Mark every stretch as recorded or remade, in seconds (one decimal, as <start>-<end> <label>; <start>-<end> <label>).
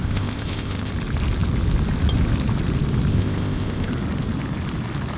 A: 0.0-0.9 remade; 0.9-3.1 recorded; 3.1-3.9 remade; 3.9-5.2 recorded